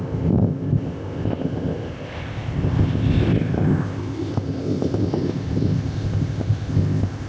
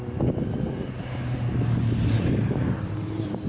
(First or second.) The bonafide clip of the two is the second